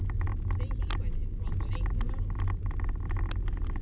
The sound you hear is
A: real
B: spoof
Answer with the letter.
A